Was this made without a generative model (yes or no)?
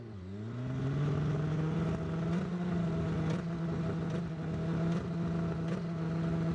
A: yes